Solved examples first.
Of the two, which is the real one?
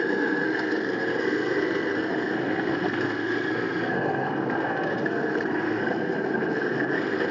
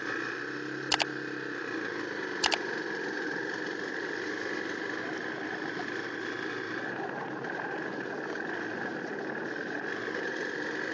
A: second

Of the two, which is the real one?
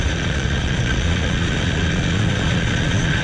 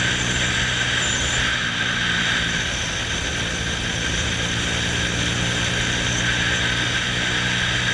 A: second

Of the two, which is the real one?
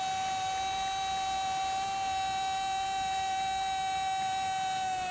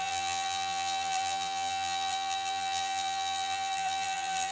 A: first